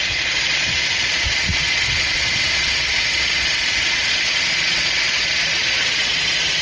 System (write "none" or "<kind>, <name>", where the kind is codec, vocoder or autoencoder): vocoder, Vocos